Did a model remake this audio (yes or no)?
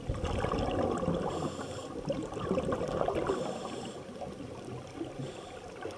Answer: no